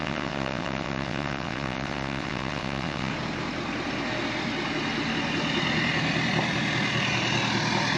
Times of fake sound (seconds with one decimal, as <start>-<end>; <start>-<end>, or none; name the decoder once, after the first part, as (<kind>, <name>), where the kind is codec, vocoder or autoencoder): 0.0-3.1 (vocoder, WaveNeXt)